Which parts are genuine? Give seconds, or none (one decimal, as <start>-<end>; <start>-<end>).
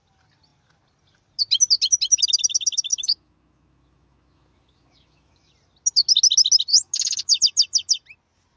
0.0-2.9; 5.5-6.7; 7.4-8.6